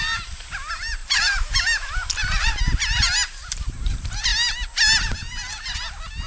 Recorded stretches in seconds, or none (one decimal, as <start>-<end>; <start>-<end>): 0.0-1.0; 2.6-6.3